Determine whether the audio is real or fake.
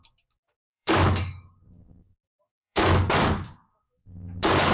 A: fake